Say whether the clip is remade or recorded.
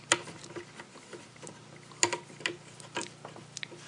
recorded